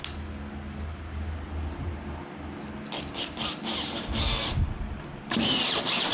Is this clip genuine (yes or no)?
yes